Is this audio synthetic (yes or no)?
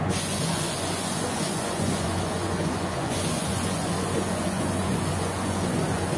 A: yes